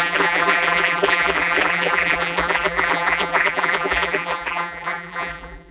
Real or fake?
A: fake